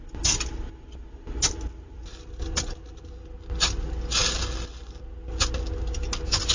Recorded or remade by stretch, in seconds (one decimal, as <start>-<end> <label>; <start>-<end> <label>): 0.0-6.5 recorded